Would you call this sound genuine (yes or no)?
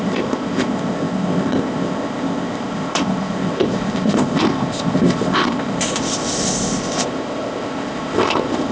no